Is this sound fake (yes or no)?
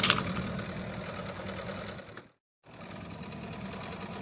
no